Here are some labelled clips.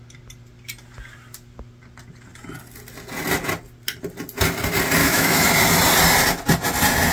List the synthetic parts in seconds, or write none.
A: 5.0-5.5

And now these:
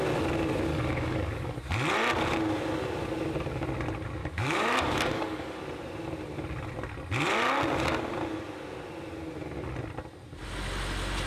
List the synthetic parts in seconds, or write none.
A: 0.7-1.6; 4.2-5.6

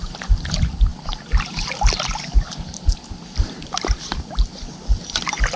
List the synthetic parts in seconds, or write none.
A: 0.0-5.6

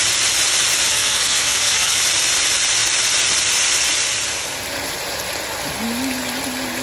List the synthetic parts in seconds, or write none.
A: 0.9-2.0

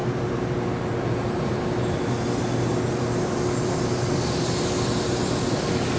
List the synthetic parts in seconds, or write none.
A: none

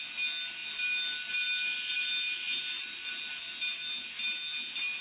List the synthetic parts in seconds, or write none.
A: none